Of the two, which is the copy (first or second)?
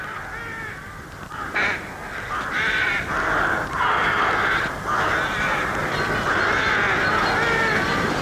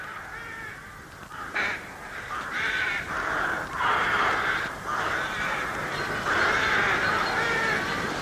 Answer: second